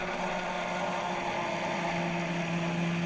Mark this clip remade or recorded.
recorded